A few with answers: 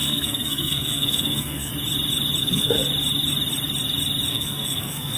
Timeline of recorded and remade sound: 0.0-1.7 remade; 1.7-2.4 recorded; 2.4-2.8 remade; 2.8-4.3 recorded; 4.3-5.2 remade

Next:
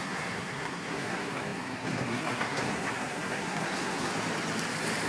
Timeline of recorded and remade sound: 0.0-4.1 remade; 4.1-5.1 recorded

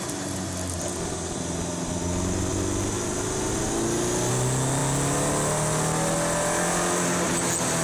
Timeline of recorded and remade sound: 0.0-7.8 recorded

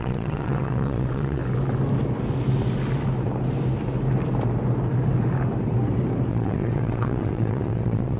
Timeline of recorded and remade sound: 0.0-1.4 remade; 1.4-6.3 recorded; 6.3-8.2 remade

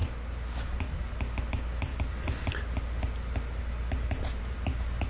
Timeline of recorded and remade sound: 0.0-5.1 recorded